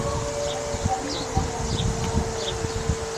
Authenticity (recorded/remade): recorded